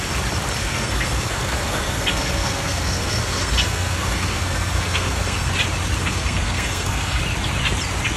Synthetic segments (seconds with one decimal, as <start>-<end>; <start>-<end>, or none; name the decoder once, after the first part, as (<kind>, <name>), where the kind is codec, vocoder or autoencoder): 0.6-5.5 (codec, SNAC); 6.0-7.2